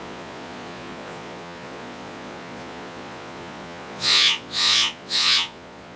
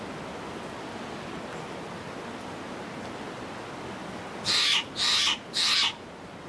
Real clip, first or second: second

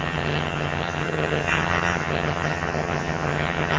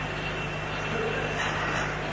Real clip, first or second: second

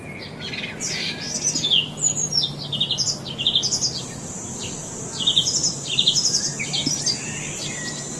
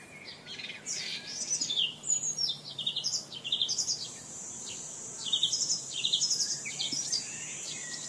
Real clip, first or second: first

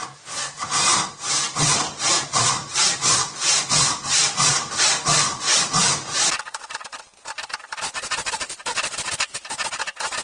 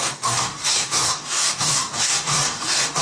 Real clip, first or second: first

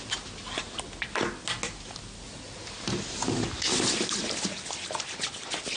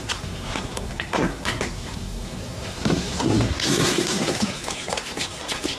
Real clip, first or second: first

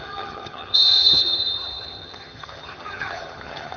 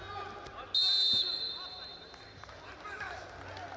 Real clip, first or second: second